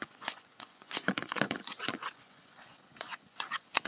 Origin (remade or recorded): remade